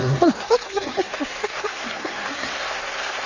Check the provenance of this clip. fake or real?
fake